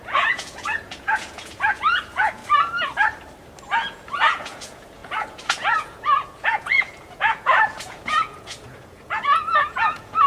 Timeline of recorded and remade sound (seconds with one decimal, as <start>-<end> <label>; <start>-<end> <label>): 0.0-2.4 remade; 2.4-3.6 recorded; 3.6-10.3 remade